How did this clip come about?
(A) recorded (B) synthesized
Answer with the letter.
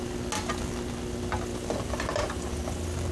A